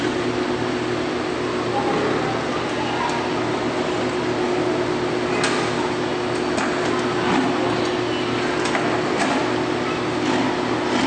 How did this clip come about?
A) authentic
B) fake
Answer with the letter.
A